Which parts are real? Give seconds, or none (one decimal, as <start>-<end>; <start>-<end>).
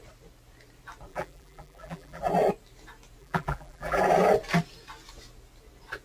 0.0-1.1; 2.2-3.2; 4.0-6.0